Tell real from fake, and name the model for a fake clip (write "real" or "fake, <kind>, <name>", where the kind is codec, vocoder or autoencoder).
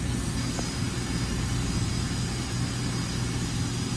real